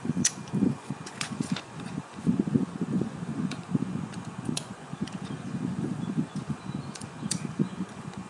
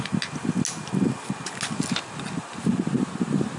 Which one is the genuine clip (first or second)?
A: second